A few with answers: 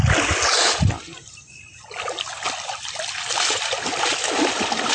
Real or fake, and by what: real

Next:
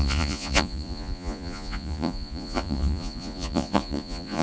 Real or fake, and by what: fake, vocoder, Vocos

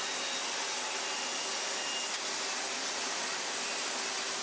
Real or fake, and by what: real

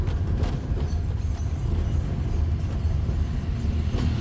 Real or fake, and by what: real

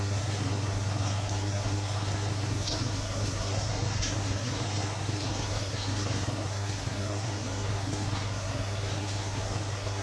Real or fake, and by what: fake, codec, SNAC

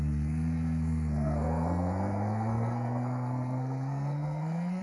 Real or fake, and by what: fake, codec, SNAC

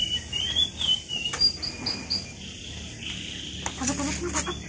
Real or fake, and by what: real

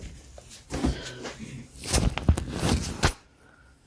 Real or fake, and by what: real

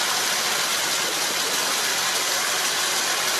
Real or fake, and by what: real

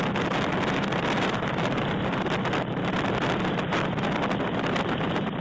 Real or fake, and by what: real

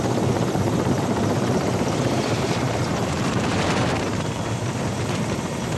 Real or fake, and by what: fake, vocoder, BigVGAN v2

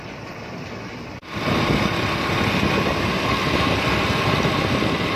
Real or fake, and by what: real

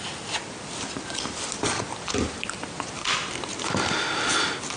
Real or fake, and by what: real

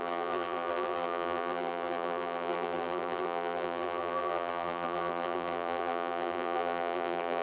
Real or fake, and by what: fake, vocoder, BigVGAN v2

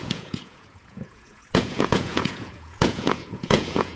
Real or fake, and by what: fake, vocoder, Vocos